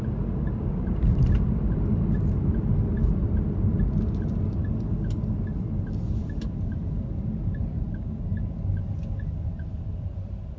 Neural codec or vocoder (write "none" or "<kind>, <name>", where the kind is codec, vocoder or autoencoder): none